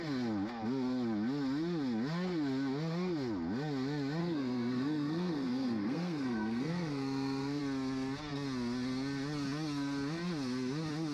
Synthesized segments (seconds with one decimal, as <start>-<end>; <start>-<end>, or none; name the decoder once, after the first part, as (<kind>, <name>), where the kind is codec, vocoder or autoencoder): 4.2-7.6 (codec, SNAC)